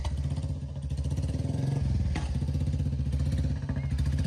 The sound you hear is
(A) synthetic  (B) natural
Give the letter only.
B